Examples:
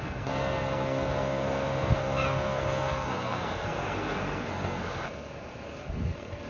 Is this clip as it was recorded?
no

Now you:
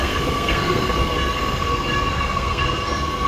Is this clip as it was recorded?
no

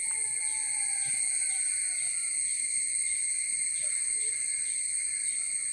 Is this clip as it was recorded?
yes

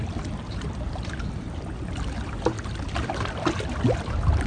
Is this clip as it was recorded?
yes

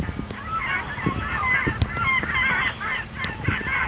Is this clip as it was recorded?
yes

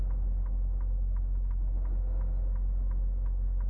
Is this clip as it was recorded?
yes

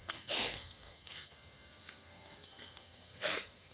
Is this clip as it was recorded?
no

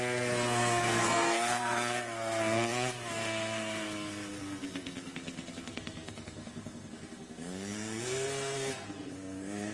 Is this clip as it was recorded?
no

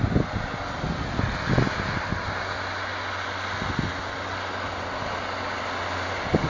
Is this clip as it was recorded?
yes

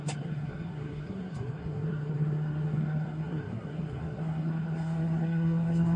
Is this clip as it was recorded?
no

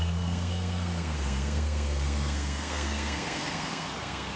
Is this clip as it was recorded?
no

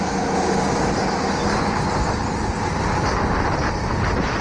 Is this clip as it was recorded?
yes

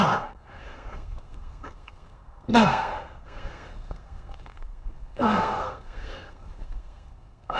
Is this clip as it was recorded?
no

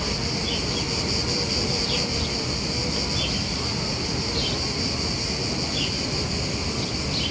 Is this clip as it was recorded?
yes